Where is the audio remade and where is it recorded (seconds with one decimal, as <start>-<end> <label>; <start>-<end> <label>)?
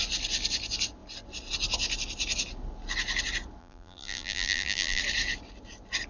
0.0-3.6 recorded; 3.6-5.0 remade; 5.0-6.1 recorded